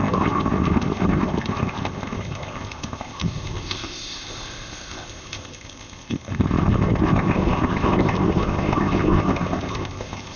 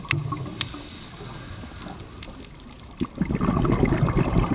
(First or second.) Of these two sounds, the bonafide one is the second